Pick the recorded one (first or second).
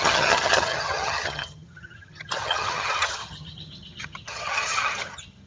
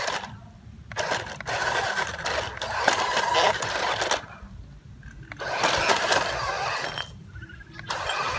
second